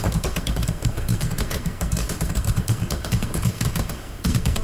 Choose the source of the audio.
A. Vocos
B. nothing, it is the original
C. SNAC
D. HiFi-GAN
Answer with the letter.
C